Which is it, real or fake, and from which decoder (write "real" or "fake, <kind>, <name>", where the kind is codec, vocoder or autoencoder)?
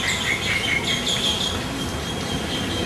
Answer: real